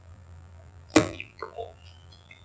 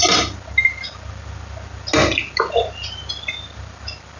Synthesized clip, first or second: first